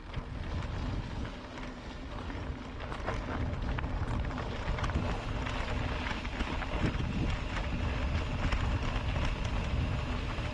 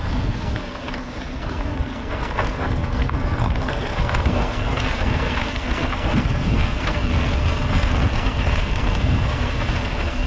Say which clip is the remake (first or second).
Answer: second